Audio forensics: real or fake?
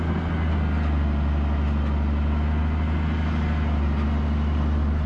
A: real